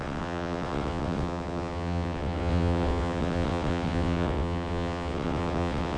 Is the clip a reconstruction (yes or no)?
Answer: yes